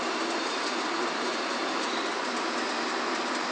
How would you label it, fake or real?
real